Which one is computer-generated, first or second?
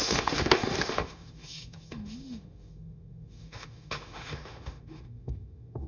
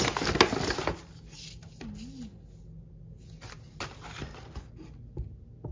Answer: first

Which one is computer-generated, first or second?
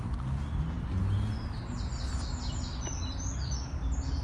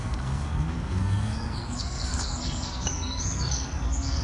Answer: second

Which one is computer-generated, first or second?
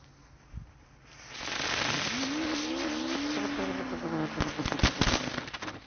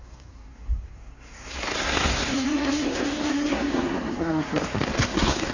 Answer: second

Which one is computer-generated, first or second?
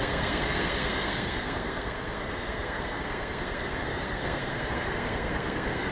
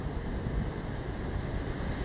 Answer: first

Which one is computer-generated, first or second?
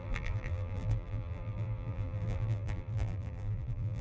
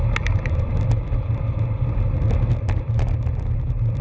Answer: first